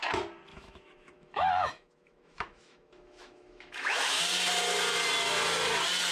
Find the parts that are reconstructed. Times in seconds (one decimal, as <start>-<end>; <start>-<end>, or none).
0.5-4.2